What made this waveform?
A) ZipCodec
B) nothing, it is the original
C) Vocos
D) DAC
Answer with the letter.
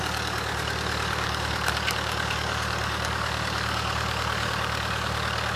D